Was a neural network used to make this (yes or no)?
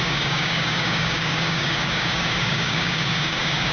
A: yes